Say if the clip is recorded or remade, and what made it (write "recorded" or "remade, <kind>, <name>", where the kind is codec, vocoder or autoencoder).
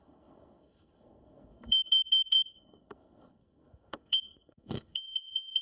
remade, codec, SNAC